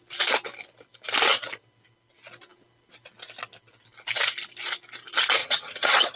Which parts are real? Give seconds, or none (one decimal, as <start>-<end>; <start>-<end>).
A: 0.0-5.4